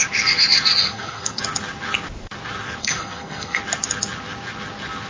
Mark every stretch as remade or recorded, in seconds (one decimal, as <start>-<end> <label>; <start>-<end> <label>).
0.0-0.8 recorded; 0.8-1.4 remade; 1.4-2.8 recorded; 2.8-3.6 remade; 3.6-5.1 recorded